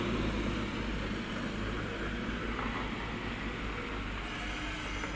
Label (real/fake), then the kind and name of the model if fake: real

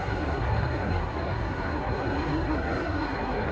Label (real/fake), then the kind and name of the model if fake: fake, codec, SNAC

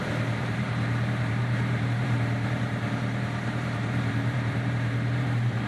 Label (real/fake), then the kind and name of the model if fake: fake, vocoder, BigVGAN v2